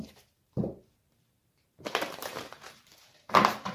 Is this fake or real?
fake